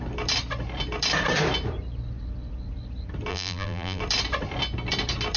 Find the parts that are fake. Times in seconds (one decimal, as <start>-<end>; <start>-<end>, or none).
3.3-4.0